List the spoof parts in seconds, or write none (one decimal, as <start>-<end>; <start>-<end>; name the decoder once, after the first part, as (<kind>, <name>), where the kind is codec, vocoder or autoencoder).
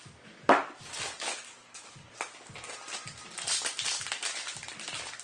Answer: 1.5-2.1 (codec, HILCodec)